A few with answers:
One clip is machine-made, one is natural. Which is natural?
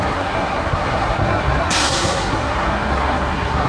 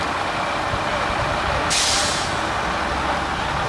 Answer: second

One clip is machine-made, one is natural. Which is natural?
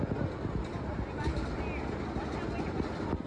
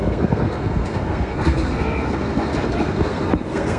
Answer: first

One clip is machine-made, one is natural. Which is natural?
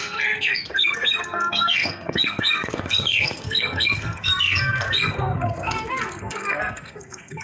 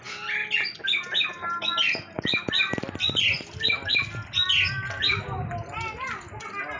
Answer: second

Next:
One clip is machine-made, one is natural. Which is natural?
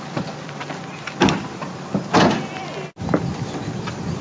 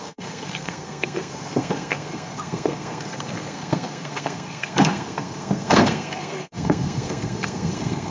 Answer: first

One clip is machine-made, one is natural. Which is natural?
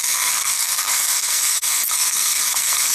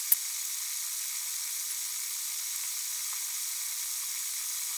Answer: second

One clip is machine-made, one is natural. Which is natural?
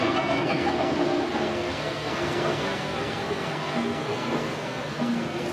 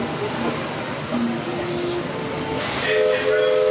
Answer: second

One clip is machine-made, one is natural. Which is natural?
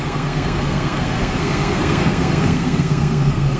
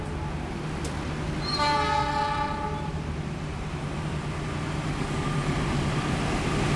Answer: second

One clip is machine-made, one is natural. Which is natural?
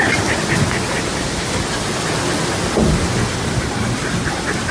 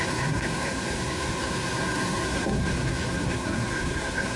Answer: first